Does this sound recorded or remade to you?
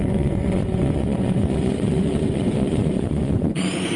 remade